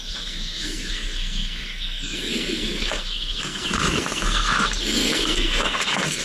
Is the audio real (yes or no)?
no